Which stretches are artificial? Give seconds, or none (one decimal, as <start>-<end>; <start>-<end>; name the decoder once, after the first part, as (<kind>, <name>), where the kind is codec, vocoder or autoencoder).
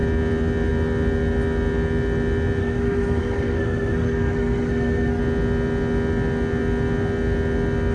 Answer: 2.6-5.2 (codec, SNAC)